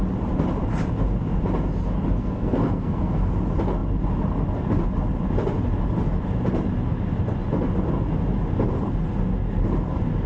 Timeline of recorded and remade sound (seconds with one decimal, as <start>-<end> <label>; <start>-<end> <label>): 0.0-2.2 recorded; 2.2-3.3 remade; 3.3-10.3 recorded